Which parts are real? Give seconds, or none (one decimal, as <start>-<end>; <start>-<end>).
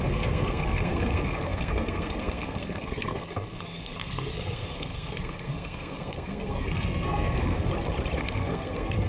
7.7-8.2